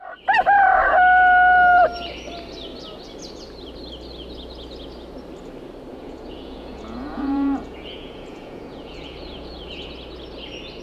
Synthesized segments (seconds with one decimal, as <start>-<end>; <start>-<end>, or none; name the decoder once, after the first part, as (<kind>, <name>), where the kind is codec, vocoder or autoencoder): 5.9-9.9 (vocoder, Vocos)